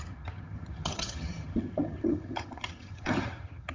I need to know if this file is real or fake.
fake